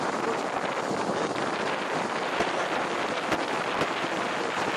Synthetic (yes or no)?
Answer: no